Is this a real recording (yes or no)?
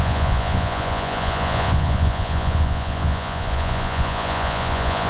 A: no